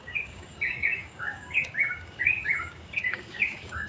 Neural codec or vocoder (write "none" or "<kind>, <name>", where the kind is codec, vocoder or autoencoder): codec, DAC